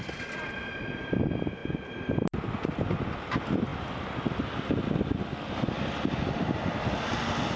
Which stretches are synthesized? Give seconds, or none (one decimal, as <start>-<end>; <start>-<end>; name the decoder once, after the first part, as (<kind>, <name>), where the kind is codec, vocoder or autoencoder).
none